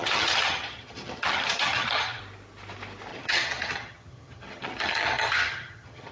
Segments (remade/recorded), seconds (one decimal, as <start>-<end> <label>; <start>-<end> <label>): 0.0-2.2 remade; 2.2-3.1 recorded; 3.1-6.1 remade